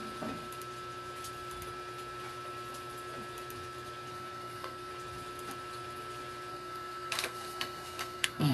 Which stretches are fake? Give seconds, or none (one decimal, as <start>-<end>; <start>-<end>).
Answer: 4.1-4.9; 6.5-8.5